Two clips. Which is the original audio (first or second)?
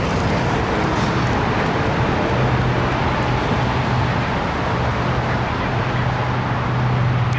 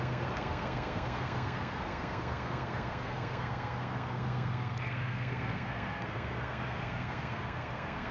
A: first